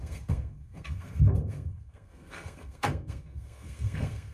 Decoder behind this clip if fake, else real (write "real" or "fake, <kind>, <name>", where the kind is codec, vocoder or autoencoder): fake, codec, SNAC